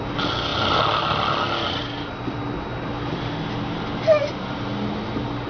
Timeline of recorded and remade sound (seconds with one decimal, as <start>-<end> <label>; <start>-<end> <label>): 0.0-5.5 recorded